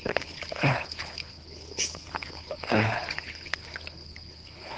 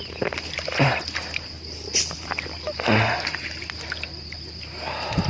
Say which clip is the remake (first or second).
first